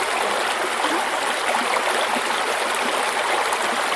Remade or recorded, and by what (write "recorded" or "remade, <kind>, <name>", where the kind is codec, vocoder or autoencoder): recorded